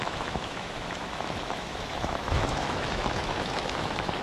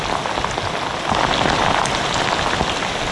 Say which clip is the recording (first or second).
second